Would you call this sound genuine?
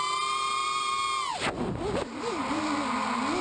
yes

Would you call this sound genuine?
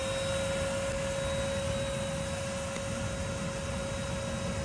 yes